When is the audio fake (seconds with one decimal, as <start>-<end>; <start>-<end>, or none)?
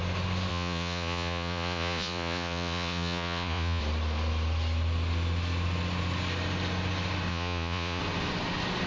0.5-3.8; 7.3-8.0